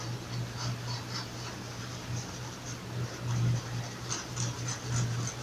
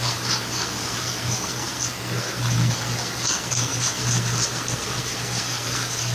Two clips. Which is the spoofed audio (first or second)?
second